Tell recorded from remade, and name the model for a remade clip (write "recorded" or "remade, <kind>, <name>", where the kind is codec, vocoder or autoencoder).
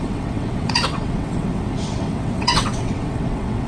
remade, vocoder, WaveNeXt